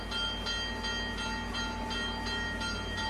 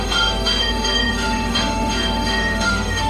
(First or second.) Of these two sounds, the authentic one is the first